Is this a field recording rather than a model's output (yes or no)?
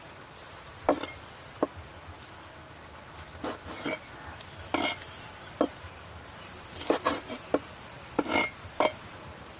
yes